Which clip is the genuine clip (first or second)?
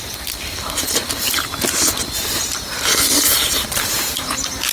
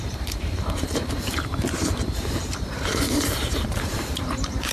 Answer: first